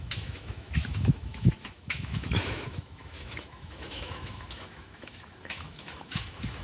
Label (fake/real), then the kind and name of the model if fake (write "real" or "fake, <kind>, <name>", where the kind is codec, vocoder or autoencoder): fake, autoencoder, DAC-VAE